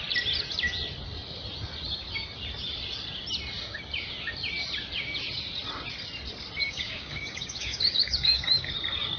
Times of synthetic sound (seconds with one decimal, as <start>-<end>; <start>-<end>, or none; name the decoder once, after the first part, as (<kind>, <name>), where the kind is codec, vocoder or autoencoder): 6.6-8.7 (codec, DAC)